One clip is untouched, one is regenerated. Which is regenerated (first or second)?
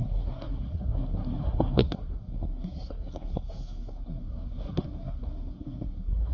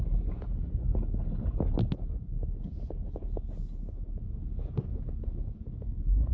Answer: first